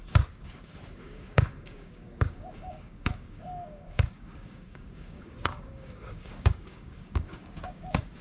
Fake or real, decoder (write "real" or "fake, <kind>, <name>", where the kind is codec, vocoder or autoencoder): fake, codec, DAC